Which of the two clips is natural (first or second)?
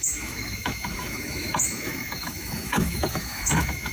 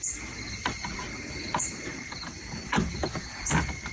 second